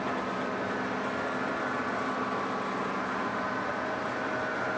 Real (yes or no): yes